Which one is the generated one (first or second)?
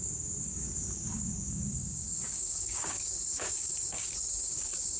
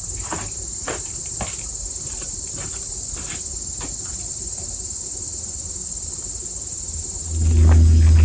first